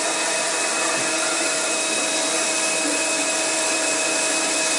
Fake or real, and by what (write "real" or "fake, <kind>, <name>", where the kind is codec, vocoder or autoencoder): real